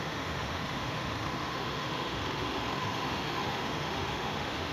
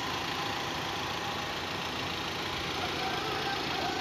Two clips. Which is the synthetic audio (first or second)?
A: first